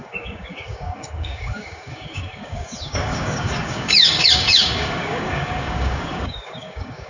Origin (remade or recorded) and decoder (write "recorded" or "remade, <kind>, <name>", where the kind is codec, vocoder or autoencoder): remade, codec, DAC